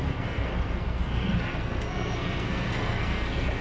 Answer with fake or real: fake